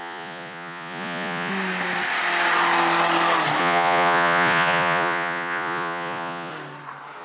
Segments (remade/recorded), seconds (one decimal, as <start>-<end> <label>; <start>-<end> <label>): 0.0-1.5 remade; 1.5-3.6 recorded; 3.6-6.5 remade; 6.5-7.2 recorded